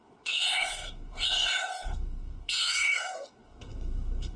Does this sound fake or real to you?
fake